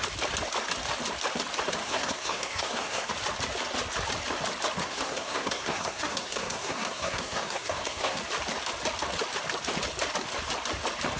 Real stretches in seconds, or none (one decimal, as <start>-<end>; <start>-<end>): 0.0-1.8; 3.1-4.8; 8.2-11.2